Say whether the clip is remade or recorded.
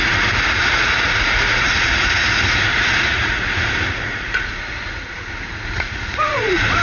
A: remade